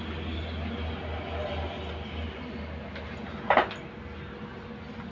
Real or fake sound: real